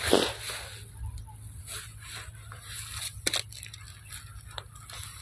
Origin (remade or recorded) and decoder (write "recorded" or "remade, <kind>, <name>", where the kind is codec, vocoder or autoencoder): recorded